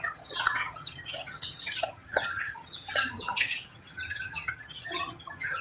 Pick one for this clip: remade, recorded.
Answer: remade